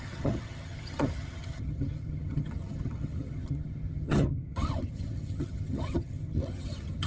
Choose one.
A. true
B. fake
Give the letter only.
B